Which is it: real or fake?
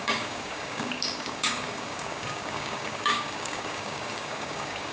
fake